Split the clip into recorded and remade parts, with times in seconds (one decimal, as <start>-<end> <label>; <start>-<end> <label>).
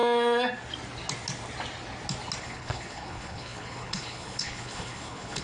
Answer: 0.0-2.4 recorded; 2.4-5.4 remade